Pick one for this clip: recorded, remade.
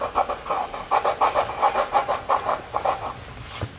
recorded